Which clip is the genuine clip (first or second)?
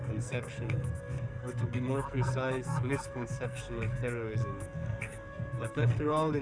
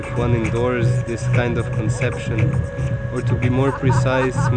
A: second